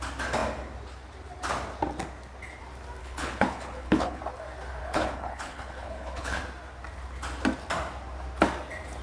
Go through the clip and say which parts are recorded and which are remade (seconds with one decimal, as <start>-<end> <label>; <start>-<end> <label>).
0.0-3.0 recorded; 3.0-4.2 remade; 4.2-4.8 recorded; 4.8-6.4 remade; 6.4-9.0 recorded